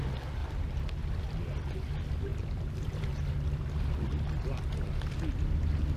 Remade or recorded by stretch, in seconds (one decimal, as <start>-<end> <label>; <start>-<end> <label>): 0.0-6.0 recorded